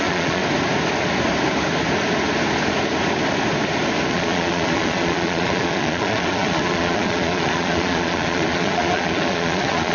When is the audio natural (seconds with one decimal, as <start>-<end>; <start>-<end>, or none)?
0.4-4.1